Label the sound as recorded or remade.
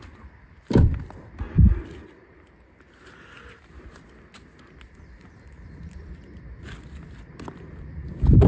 recorded